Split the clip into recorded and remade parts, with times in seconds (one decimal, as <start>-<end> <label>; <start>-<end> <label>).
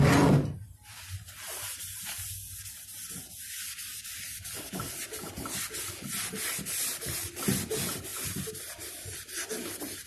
0.0-10.1 recorded